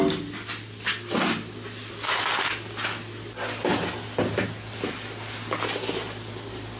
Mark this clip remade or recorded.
recorded